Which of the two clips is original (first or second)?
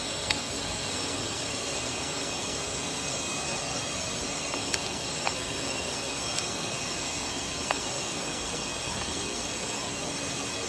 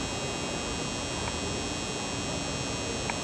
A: second